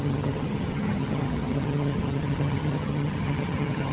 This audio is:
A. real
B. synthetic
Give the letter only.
B